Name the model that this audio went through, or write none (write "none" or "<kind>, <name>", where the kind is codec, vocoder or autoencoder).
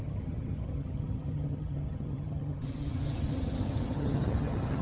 vocoder, HiFi-GAN